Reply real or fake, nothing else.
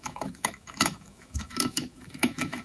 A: fake